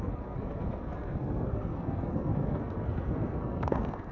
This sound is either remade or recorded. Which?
remade